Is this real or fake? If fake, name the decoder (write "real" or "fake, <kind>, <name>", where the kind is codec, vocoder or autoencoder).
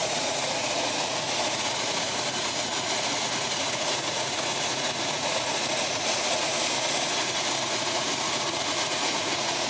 fake, vocoder, Vocos